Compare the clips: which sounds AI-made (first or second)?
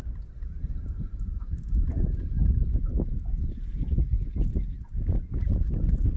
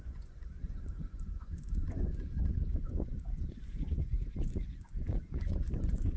second